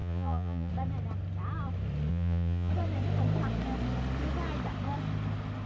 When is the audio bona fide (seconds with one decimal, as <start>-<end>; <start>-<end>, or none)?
0.7-2.1; 2.7-5.7